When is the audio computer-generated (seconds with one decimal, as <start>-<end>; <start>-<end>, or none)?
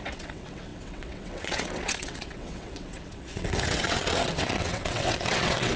0.0-5.8